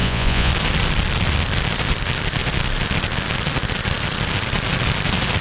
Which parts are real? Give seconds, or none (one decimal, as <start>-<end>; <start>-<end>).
0.5-5.4